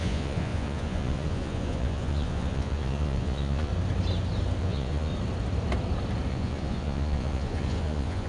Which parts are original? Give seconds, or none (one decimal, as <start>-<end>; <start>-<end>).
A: 3.7-4.6; 5.1-6.3